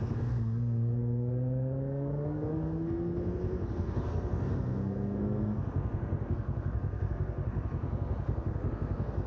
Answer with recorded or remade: remade